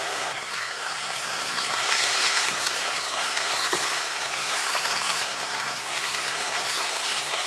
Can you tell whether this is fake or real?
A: fake